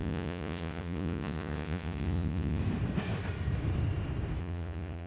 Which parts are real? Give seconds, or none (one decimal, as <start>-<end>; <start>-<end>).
2.6-4.4